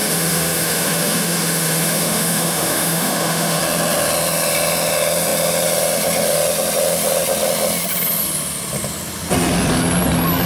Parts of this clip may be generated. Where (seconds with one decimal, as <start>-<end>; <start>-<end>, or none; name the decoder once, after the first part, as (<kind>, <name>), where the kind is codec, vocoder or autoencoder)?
0.0-3.6 (autoencoder, DAC-VAE)